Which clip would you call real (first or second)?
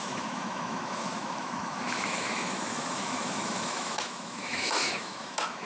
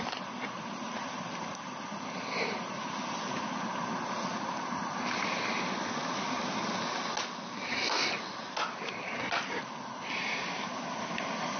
second